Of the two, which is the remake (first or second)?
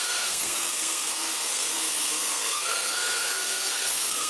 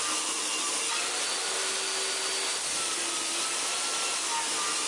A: first